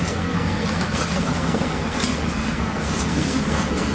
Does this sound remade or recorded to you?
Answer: remade